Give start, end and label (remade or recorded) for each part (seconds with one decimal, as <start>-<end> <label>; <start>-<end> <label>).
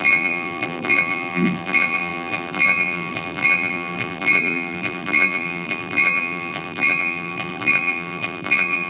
0.0-8.9 remade